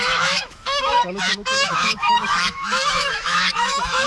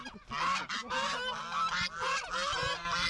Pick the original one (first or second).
second